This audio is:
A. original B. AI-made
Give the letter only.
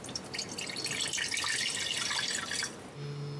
A